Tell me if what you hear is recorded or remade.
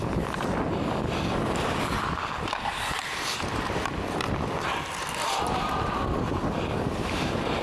recorded